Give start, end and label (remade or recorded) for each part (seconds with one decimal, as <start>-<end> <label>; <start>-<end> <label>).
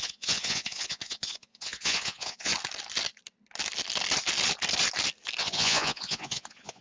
0.0-2.5 remade; 2.5-5.4 recorded; 5.4-6.8 remade